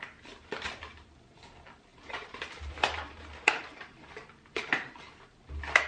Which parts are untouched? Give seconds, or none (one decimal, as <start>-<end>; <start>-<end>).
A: 0.0-1.9; 5.1-5.9